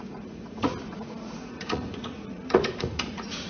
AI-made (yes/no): yes